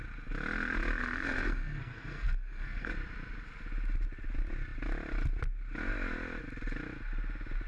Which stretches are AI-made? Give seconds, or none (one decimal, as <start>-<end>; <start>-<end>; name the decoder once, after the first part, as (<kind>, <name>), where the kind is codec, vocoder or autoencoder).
1.0-2.9 (codec, SNAC)